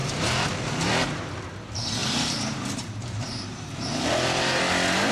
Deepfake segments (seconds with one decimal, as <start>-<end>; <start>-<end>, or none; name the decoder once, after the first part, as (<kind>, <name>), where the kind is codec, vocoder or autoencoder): 0.0-0.7 (vocoder, BigVGAN v2); 2.0-4.6

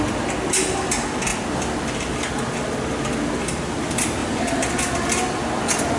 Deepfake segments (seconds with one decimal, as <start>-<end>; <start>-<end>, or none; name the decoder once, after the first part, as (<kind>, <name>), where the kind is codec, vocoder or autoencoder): 1.3-2.3 (vocoder, BigVGAN v2); 4.2-4.8

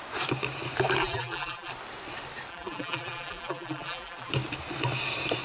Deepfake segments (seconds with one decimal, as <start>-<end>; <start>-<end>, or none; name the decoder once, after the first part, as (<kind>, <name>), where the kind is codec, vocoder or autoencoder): 1.0-1.7 (vocoder, BigVGAN v2); 2.5-4.3

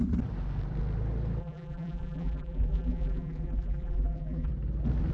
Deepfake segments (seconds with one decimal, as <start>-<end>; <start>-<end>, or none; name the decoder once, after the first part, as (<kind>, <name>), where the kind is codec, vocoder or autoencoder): 1.4-4.5 (vocoder, BigVGAN v2)

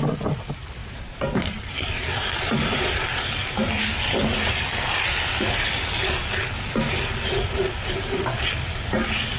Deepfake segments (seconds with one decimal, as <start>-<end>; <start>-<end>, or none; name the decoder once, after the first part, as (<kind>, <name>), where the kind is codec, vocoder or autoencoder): 0.8-1.6 (vocoder, BigVGAN v2); 3.4-4.0

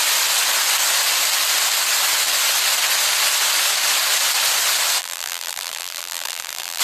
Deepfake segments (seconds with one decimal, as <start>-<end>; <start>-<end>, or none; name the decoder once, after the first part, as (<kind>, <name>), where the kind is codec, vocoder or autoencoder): 5.0-6.8 (vocoder, BigVGAN v2)

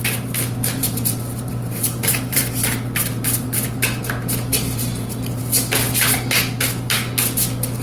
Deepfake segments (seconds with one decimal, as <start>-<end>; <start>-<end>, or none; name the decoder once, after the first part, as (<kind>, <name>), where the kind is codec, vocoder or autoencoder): 0.8-3.5 (vocoder, BigVGAN v2); 4.5-5.4